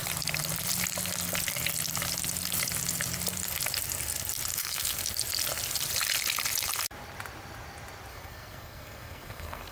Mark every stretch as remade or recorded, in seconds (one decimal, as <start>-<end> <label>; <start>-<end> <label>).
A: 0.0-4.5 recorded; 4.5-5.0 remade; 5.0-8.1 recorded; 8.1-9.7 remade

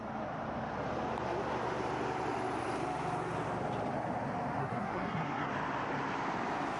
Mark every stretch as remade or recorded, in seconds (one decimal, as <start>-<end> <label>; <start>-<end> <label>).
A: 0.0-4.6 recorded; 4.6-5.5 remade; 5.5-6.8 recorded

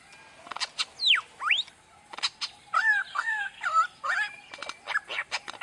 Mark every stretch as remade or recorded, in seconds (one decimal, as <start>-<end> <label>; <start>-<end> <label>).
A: 0.0-3.1 recorded; 3.1-3.6 remade; 3.6-5.6 recorded

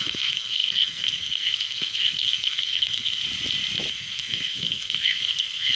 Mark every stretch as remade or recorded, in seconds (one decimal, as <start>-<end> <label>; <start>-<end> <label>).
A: 0.0-3.2 remade; 3.2-3.9 recorded; 3.9-5.8 remade